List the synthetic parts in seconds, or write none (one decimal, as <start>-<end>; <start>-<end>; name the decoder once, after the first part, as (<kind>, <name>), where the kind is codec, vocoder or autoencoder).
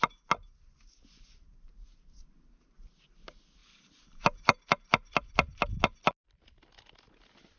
none